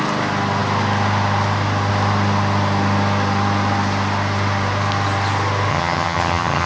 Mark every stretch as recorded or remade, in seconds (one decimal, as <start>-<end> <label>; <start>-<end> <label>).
0.0-5.7 recorded; 5.7-6.7 remade